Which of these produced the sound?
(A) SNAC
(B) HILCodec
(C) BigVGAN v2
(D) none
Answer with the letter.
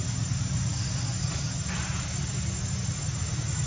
D